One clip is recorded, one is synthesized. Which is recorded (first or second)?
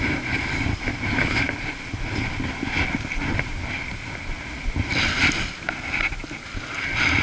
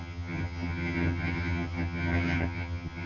first